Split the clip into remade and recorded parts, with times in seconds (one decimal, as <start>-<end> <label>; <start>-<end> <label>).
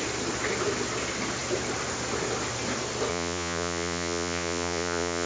0.0-3.1 recorded; 3.1-5.3 remade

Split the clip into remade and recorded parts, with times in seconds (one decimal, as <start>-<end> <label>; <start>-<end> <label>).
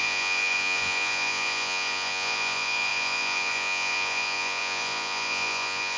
0.0-6.0 remade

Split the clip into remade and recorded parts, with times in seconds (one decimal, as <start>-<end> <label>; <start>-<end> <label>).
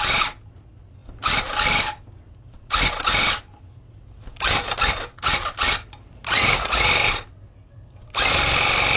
0.0-6.4 recorded; 6.4-6.9 remade; 6.9-9.0 recorded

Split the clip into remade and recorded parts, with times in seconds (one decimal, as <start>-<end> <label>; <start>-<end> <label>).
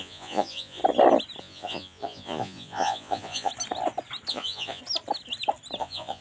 0.0-0.8 remade; 0.8-1.4 recorded; 1.4-3.5 remade; 3.5-4.3 recorded; 4.3-4.8 remade; 4.8-5.8 recorded; 5.8-6.2 remade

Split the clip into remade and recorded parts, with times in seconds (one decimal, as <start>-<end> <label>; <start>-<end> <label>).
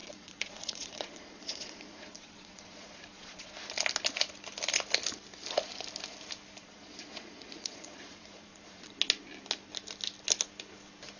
0.0-3.5 remade; 3.5-6.6 recorded; 6.6-8.9 remade; 8.9-11.2 recorded